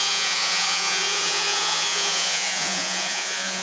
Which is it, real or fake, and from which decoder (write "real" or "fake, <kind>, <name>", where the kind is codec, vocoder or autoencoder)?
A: fake, vocoder, Vocos